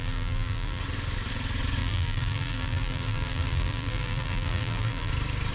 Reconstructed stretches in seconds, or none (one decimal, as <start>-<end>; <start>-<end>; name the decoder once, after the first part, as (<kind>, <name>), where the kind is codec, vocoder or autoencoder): 0.0-0.8 (vocoder, BigVGAN v2); 1.8-5.1